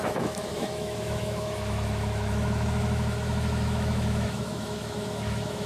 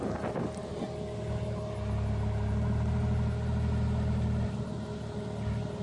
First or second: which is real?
second